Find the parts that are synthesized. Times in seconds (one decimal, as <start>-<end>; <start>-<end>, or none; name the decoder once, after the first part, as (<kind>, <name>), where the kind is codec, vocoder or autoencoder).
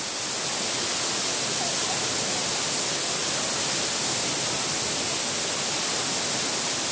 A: none